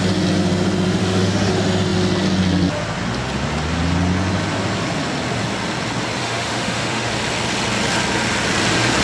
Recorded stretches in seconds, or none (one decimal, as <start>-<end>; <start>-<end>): 0.0-1.0; 1.5-6.2; 7.1-9.0

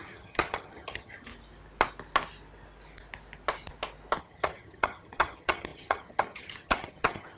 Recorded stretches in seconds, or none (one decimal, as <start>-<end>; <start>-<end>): 1.3-4.2

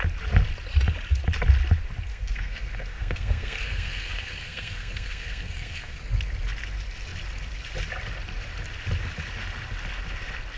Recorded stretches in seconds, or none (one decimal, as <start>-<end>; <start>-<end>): 0.0-2.1; 6.0-10.6

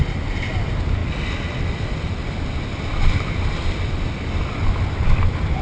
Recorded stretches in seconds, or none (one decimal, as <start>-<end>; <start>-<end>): 0.0-5.6

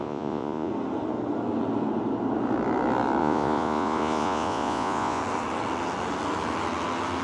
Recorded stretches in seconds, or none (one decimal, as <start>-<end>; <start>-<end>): 0.7-3.2; 5.2-7.2

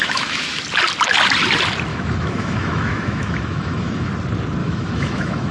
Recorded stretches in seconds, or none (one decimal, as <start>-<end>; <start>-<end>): 0.6-1.9; 4.1-4.6